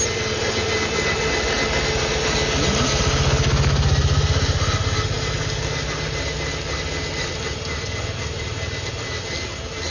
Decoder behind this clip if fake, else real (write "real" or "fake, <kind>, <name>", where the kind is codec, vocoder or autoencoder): real